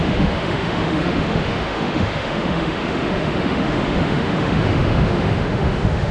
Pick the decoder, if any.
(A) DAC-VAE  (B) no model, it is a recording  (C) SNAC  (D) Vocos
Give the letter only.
A